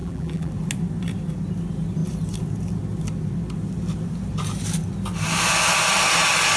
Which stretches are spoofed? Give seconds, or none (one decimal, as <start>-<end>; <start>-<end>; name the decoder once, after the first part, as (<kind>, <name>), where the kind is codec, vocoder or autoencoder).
0.0-0.5 (vocoder, BigVGAN v2)